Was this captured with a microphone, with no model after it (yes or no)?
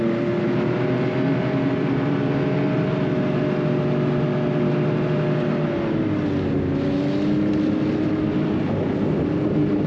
yes